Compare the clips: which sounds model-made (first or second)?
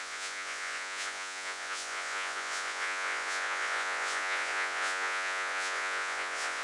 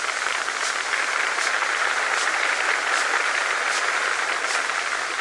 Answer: first